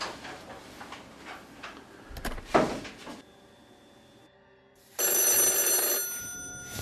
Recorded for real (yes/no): yes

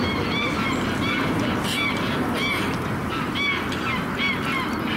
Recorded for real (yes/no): no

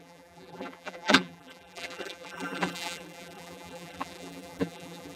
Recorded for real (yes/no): no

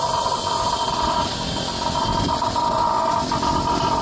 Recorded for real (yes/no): no